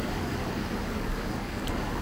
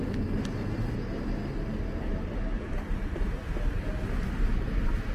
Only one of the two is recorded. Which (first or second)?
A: second